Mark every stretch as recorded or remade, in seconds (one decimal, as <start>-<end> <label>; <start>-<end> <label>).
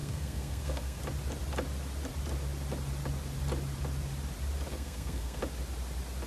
0.0-1.0 remade; 1.0-4.7 recorded; 4.7-5.4 remade; 5.4-6.3 recorded